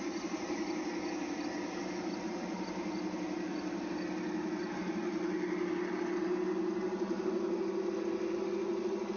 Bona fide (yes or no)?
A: yes